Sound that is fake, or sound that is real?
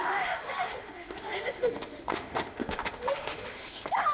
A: fake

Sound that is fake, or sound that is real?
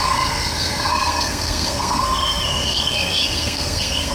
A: fake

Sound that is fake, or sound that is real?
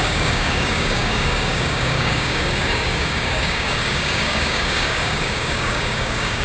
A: fake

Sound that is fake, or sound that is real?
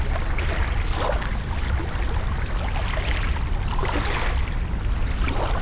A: real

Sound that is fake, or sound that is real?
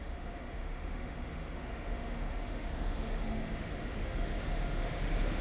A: fake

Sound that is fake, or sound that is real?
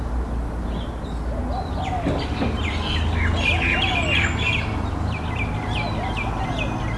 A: real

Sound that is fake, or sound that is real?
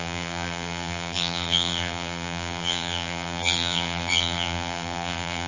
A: fake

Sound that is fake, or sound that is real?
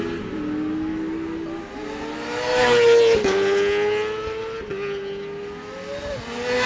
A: real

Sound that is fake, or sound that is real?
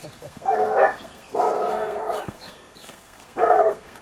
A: fake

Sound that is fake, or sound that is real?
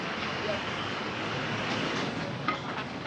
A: fake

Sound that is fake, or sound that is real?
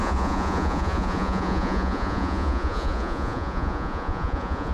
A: fake